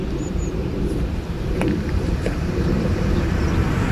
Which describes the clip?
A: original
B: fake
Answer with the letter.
B